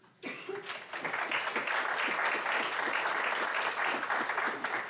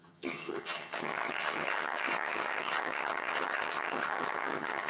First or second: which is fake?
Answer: second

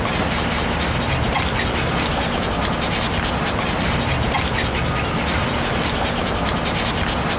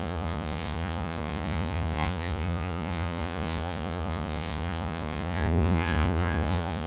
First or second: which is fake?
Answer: second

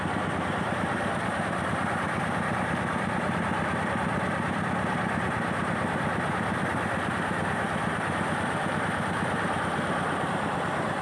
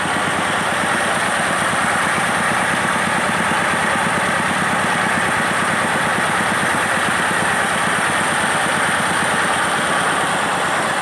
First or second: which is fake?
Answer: first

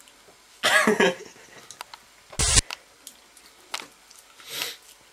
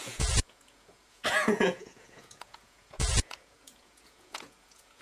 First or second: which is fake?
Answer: second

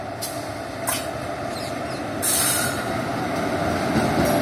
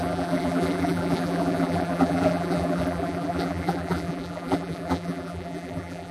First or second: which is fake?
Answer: second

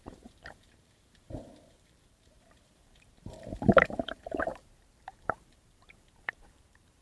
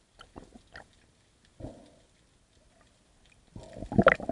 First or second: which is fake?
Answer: first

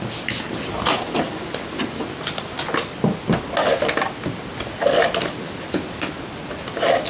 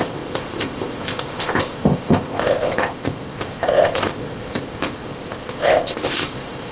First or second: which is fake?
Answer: second